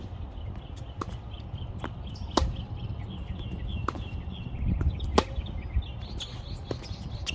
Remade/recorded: recorded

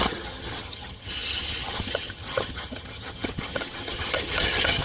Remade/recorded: remade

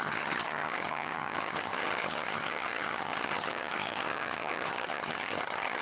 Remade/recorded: remade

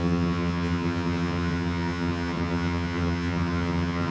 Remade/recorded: remade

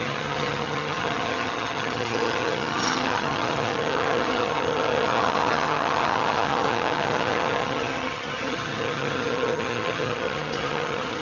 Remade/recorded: remade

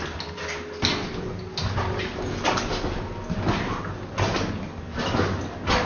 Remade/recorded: recorded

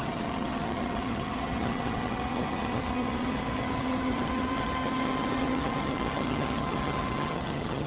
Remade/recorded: remade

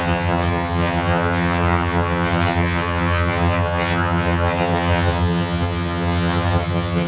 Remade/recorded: remade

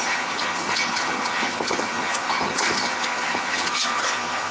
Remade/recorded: remade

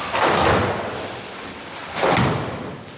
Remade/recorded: recorded